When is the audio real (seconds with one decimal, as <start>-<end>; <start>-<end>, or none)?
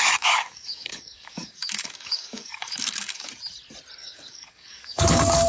3.3-4.0